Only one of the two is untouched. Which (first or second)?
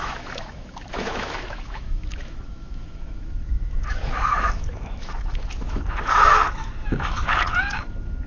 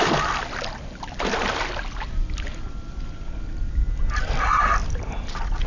second